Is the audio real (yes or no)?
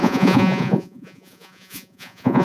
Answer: no